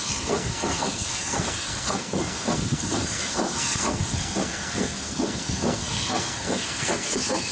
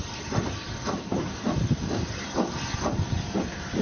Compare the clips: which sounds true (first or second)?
second